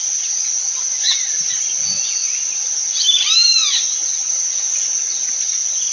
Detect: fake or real real